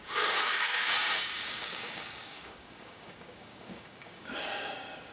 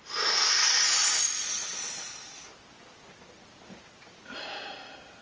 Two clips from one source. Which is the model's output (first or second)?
first